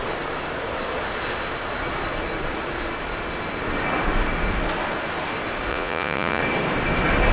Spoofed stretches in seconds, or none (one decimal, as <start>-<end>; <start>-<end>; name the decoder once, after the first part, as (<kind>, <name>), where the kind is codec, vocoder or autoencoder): 5.7-6.4 (vocoder, Vocos)